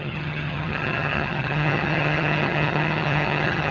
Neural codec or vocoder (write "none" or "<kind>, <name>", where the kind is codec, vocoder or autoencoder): vocoder, HiFi-GAN